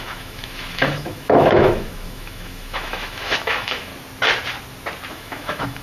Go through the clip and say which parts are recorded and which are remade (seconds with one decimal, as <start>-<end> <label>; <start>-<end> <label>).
0.0-3.9 remade; 3.9-5.1 recorded; 5.1-5.8 remade